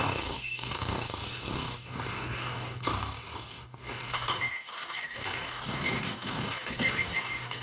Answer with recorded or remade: remade